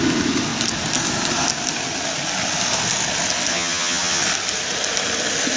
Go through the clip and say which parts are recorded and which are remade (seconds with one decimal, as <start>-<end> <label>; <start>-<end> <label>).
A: 0.0-3.5 recorded; 3.5-4.2 remade; 4.2-5.6 recorded

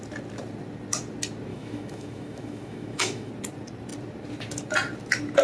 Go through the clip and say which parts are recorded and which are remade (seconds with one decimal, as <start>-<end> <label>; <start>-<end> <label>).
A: 0.0-1.5 recorded; 1.5-3.3 remade; 3.3-5.4 recorded

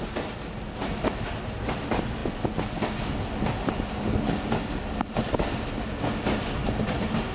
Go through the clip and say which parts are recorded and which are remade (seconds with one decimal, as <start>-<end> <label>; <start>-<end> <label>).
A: 0.0-7.3 recorded

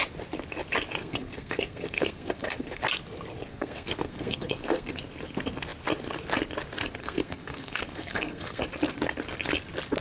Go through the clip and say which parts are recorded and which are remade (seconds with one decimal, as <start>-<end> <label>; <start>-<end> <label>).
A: 0.0-1.0 recorded; 1.0-2.8 remade; 2.8-3.5 recorded; 3.5-5.0 remade; 5.0-7.0 recorded; 7.0-8.6 remade; 8.6-10.0 recorded

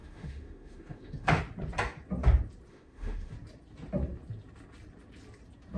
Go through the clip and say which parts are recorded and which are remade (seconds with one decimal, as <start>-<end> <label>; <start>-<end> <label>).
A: 0.0-1.4 remade; 1.4-2.7 recorded; 2.7-3.3 remade; 3.3-5.8 recorded

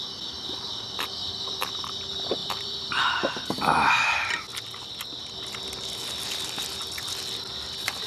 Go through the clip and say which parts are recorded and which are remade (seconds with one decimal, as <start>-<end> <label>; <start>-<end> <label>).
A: 0.0-1.2 recorded; 1.2-1.9 remade; 1.9-2.4 recorded; 2.4-3.4 remade; 3.4-8.1 recorded